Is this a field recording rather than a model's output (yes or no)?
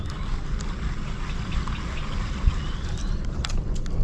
yes